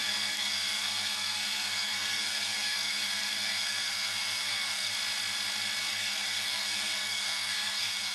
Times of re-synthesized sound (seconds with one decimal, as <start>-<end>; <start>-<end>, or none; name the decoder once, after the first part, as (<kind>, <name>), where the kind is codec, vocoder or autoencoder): 0.0-4.9 (codec, SNAC); 5.8-8.1